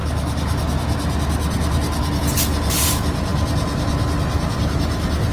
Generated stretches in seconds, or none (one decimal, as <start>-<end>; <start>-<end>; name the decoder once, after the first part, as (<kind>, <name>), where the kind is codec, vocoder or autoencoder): none